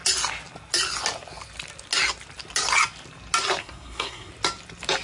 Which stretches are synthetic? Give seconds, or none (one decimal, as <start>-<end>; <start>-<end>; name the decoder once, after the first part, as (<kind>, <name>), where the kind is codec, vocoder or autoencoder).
3.6-4.3 (codec, SNAC)